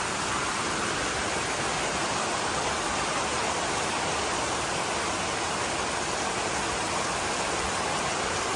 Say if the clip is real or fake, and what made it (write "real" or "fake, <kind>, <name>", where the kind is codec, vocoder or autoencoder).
real